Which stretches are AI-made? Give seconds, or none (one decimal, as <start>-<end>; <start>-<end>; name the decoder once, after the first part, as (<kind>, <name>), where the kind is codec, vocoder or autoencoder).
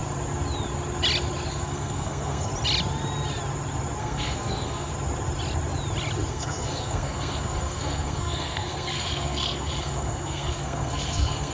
1.5-2.5 (codec, SNAC); 4.0-4.9; 6.3-11.5